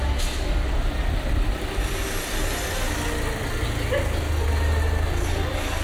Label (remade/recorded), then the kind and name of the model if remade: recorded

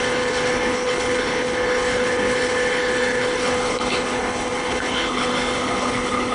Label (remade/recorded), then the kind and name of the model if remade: remade, codec, HILCodec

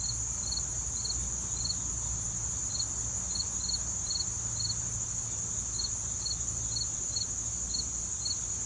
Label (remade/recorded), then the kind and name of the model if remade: recorded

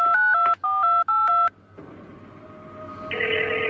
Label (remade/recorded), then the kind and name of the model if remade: recorded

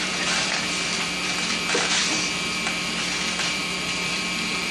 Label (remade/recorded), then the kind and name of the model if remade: remade, vocoder, BigVGAN v2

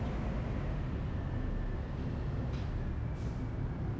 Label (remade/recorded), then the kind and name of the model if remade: recorded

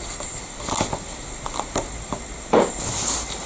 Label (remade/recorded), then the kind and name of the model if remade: recorded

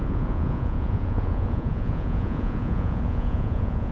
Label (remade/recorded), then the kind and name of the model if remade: remade, vocoder, Vocos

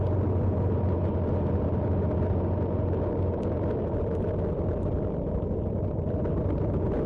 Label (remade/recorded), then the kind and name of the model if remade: recorded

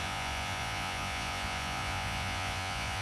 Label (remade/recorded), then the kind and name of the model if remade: remade, vocoder, Vocos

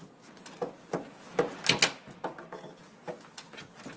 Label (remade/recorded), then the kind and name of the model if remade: recorded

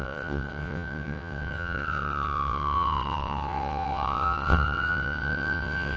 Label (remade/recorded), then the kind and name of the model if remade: remade, vocoder, WaveNeXt